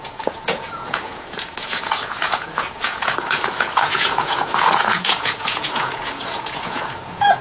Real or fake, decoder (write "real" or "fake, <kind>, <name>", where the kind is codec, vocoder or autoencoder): fake, vocoder, Vocos